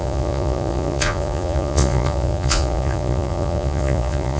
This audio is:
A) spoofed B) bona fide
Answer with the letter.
A